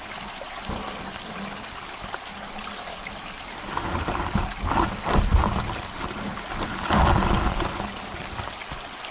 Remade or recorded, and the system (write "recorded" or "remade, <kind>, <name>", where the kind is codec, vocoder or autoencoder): recorded